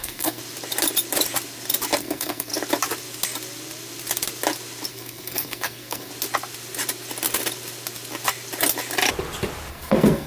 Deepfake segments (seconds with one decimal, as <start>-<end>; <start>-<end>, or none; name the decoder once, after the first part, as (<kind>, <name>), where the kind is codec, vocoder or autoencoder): 0.0-0.4 (codec, SNAC); 2.0-2.5; 4.9-6.1; 9.7-10.3